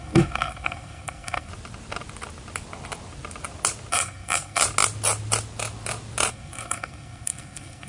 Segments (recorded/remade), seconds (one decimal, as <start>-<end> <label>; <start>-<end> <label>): 0.0-1.5 remade; 1.5-3.9 recorded; 3.9-4.6 remade; 4.6-6.3 recorded; 6.3-7.9 remade